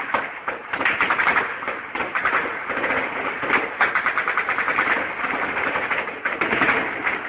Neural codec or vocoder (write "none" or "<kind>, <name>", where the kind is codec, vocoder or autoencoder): none